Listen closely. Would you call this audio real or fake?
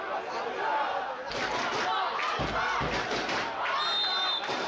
real